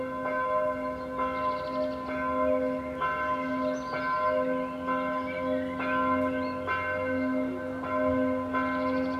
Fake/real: real